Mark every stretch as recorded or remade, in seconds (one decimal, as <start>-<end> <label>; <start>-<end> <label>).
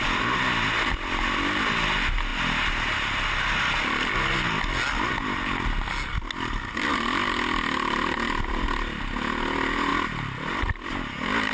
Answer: 0.0-11.5 recorded